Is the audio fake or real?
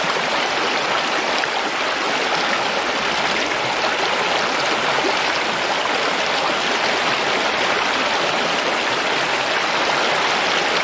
real